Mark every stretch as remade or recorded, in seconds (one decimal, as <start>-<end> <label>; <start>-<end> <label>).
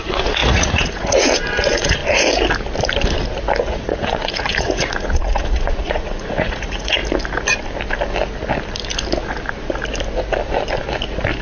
0.0-2.0 remade; 2.0-3.6 recorded; 3.6-7.0 remade; 7.0-11.4 recorded